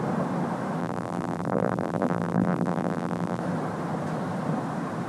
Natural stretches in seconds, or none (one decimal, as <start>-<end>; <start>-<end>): 0.0-0.8; 3.4-5.1